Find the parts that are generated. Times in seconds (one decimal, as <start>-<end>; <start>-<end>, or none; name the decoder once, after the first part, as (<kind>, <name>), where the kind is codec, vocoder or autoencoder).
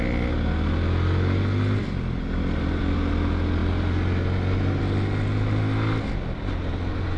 none